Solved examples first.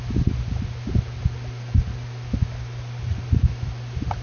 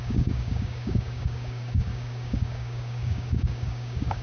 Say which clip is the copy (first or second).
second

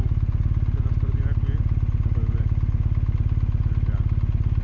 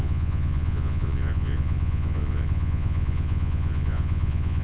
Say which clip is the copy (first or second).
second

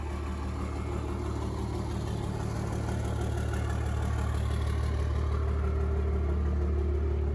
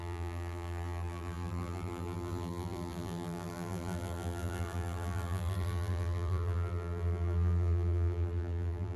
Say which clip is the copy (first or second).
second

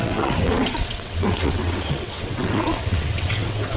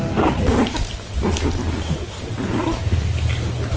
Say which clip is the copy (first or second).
first